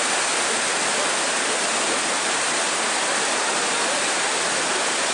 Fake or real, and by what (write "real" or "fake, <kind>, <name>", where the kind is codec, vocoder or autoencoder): real